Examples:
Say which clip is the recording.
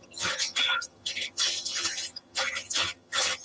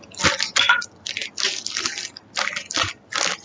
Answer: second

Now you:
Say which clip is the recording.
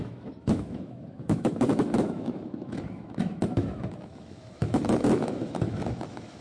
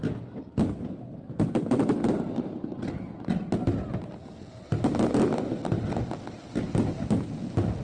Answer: second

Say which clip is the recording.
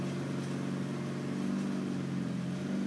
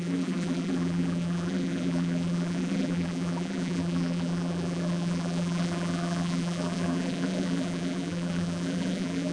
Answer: first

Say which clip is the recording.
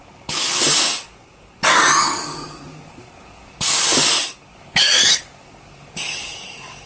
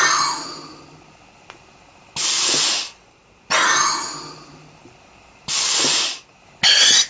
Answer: second